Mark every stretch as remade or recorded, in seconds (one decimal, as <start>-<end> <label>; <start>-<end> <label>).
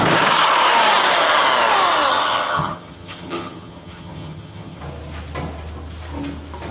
0.0-2.1 recorded; 2.1-4.8 remade; 4.8-6.7 recorded